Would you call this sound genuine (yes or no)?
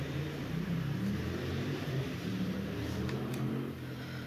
no